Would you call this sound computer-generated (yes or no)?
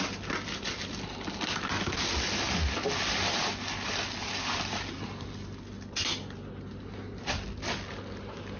no